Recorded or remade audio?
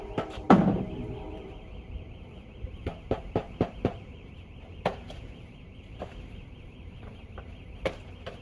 remade